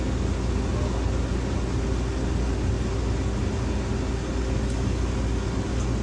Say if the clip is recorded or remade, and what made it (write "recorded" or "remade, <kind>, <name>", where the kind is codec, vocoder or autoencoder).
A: recorded